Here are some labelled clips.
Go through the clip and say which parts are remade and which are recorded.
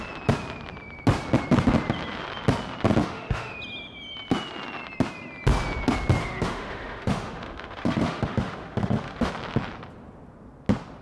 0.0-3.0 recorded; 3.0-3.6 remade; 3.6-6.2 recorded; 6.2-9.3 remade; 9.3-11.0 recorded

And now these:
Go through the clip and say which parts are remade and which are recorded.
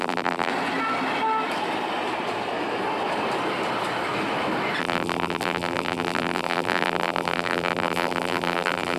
0.0-0.5 remade; 0.5-4.8 recorded; 4.8-9.0 remade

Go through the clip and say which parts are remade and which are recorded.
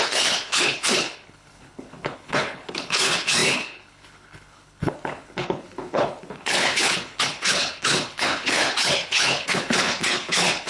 0.0-10.7 remade